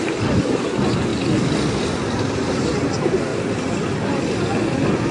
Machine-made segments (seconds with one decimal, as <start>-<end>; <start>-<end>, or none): none